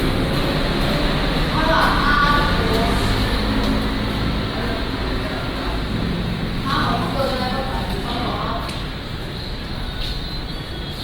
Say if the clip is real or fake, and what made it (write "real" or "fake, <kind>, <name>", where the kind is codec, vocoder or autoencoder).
real